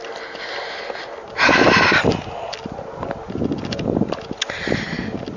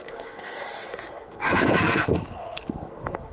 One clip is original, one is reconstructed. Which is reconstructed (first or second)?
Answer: second